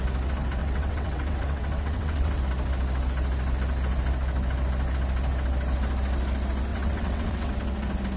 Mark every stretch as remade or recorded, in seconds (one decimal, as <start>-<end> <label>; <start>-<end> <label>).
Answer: 0.0-0.6 recorded; 0.6-2.4 remade; 2.4-6.7 recorded; 6.7-7.5 remade; 7.5-8.2 recorded